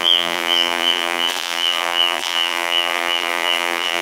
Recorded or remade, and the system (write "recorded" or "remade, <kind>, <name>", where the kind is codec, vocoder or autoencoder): remade, vocoder, BigVGAN v2